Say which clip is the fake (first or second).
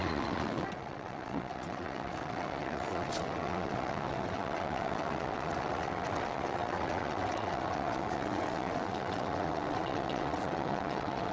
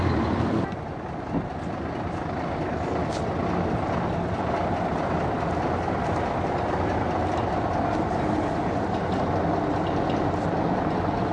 first